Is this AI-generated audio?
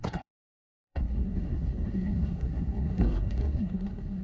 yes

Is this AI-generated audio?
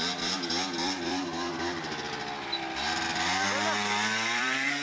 yes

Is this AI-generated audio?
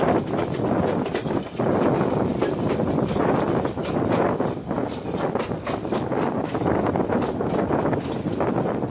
no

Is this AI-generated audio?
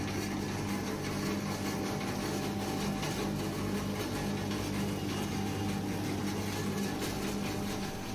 no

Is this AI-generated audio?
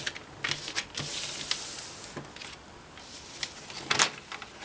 no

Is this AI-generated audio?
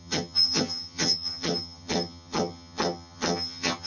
yes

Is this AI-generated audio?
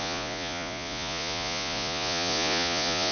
yes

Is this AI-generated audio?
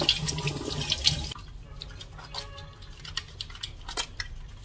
no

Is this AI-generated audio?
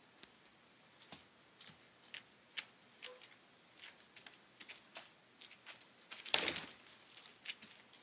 no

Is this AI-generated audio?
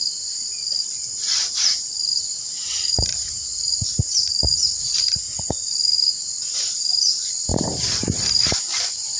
no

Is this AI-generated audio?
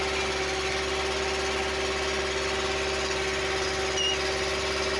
no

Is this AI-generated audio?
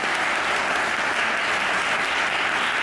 no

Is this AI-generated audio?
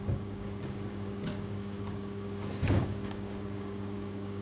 yes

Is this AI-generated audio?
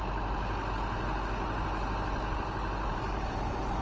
no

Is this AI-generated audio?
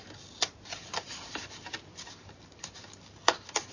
no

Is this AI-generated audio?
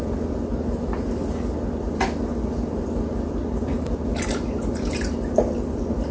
no